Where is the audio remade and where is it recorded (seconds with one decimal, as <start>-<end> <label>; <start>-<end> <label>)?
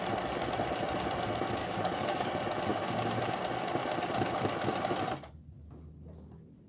0.0-1.6 recorded; 1.6-2.3 remade; 2.3-6.7 recorded